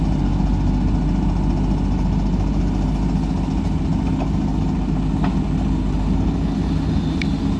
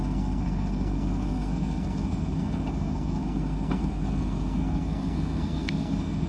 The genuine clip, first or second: first